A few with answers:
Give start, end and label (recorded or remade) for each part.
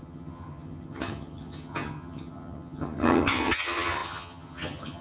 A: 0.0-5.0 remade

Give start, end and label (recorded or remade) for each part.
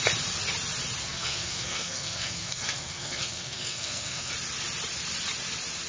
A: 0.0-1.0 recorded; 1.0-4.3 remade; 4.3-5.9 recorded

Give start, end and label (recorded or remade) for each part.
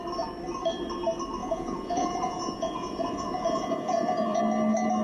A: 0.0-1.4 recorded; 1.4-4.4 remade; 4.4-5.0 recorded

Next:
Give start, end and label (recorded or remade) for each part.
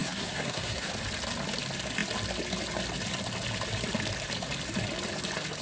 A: 0.0-0.9 remade; 0.9-5.6 recorded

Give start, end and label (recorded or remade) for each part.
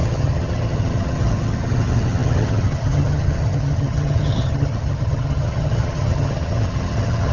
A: 0.0-7.3 remade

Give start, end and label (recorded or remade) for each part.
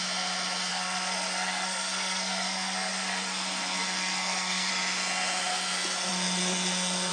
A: 0.0-0.7 recorded; 0.7-4.7 remade; 4.7-7.1 recorded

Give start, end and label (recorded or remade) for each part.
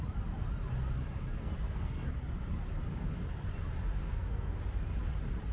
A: 0.0-1.4 recorded; 1.4-2.1 remade; 2.1-3.9 recorded; 3.9-4.6 remade; 4.6-5.5 recorded